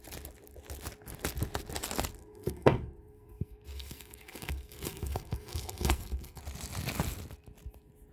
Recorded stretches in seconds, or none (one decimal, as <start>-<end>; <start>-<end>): 0.0-2.2; 6.4-8.1